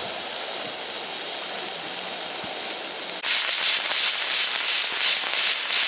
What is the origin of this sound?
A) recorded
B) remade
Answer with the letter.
A